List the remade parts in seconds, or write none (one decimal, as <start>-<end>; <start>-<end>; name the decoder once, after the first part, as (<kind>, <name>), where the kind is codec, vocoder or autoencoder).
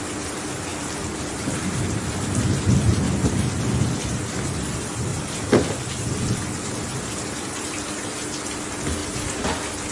0.7-2.0 (vocoder, BigVGAN v2); 5.1-6.1